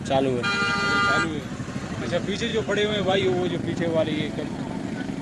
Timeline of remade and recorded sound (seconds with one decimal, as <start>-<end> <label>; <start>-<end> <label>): 0.0-2.5 recorded; 2.5-3.2 remade; 3.2-5.2 recorded